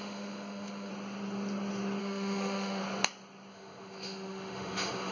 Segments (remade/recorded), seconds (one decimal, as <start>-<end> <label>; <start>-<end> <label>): 0.0-0.9 remade; 0.9-2.0 recorded; 2.0-2.8 remade; 2.8-3.5 recorded; 3.5-5.1 remade